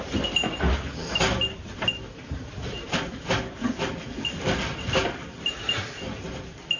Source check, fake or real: real